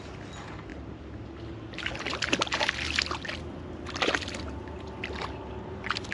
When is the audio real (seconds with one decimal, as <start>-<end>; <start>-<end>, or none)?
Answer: 0.0-6.1